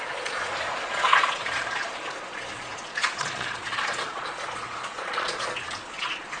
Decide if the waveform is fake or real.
fake